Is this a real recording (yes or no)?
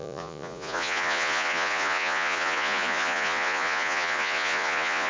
no